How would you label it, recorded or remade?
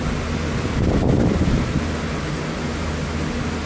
recorded